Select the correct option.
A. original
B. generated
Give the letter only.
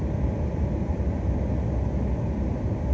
A